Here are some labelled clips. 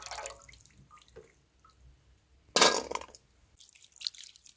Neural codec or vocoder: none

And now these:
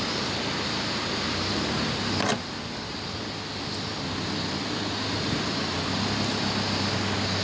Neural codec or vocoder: none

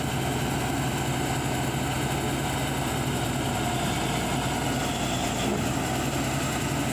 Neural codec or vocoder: none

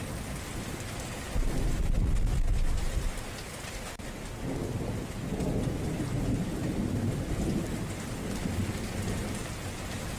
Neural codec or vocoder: none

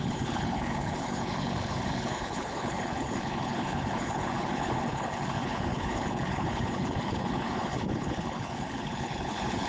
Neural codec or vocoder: codec, HILCodec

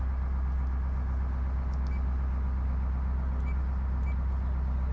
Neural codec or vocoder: none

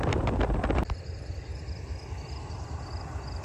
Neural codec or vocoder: vocoder, BigVGAN v2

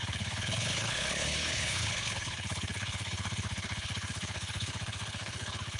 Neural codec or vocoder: codec, HILCodec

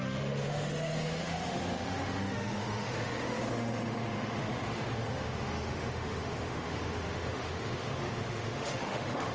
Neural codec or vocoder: autoencoder, DAC-VAE